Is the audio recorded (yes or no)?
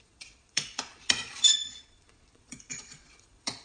no